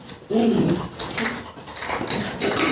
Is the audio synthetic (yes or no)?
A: no